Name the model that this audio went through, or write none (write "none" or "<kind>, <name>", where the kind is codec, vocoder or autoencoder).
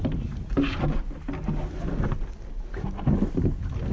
none